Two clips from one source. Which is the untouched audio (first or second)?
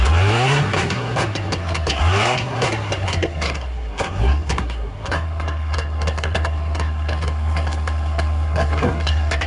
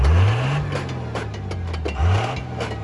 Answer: second